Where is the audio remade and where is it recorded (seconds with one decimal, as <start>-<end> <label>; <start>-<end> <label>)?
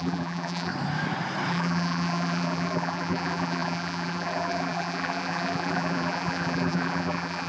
0.0-0.7 remade; 0.7-1.5 recorded; 1.5-7.5 remade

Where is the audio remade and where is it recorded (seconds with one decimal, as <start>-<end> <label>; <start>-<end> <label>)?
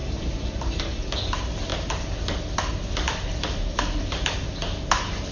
0.0-0.8 remade; 0.8-5.3 recorded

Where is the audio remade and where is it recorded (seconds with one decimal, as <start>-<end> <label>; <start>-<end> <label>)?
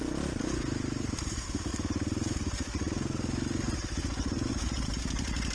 0.0-1.7 remade; 1.7-4.5 recorded; 4.5-5.5 remade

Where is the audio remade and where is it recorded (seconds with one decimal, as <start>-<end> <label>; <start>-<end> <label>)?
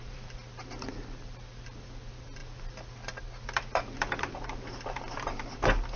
0.0-6.0 remade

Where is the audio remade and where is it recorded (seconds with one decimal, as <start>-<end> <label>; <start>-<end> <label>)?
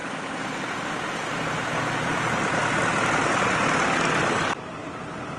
0.0-0.7 remade; 0.7-5.4 recorded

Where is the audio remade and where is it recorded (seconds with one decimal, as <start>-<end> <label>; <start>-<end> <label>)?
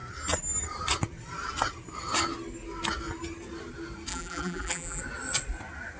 0.0-4.1 recorded; 4.1-5.0 remade; 5.0-6.0 recorded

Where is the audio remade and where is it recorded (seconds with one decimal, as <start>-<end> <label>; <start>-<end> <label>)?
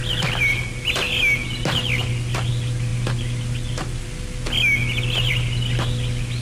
0.0-6.4 recorded